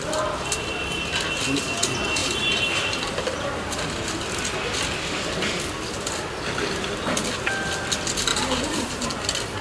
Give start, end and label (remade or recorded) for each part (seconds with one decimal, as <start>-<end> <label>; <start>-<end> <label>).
0.0-2.2 recorded; 2.2-4.1 remade; 4.1-8.3 recorded; 8.3-9.1 remade; 9.1-9.6 recorded